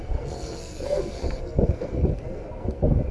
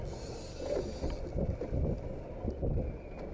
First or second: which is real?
second